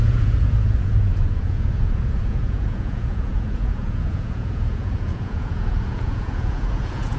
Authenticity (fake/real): fake